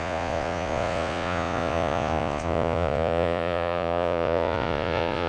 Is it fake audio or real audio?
fake